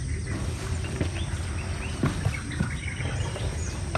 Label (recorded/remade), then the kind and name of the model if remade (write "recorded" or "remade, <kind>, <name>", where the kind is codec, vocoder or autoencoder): recorded